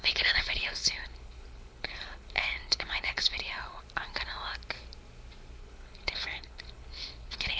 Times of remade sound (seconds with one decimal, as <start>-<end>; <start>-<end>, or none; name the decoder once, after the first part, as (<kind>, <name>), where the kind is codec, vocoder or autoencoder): 0.0-3.8 (codec, HILCodec); 5.6-7.6